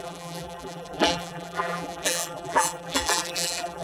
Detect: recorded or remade remade